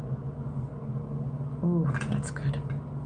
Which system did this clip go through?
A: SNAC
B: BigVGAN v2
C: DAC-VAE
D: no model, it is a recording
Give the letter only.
D